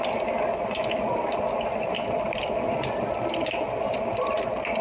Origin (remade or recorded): recorded